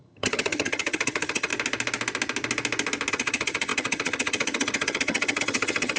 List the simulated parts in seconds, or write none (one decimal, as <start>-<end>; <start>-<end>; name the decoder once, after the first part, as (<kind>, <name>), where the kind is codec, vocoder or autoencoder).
0.0-1.5 (vocoder, HiFi-GAN); 3.1-6.0